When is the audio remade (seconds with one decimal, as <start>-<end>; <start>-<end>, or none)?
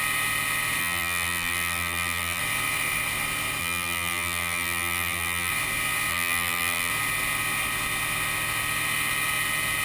0.8-2.4; 3.6-5.5; 6.1-6.9